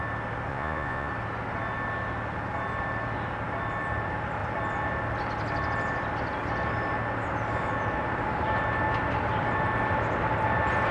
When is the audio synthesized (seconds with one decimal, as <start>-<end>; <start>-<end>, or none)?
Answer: 0.5-1.1